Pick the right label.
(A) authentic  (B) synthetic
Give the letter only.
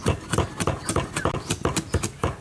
A